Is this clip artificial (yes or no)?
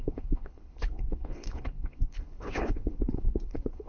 yes